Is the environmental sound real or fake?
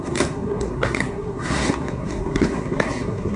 fake